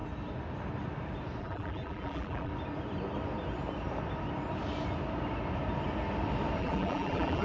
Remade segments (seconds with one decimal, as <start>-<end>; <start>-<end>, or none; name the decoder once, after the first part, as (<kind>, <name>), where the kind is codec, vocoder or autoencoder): 1.4-2.5 (vocoder, BigVGAN v2); 6.6-7.4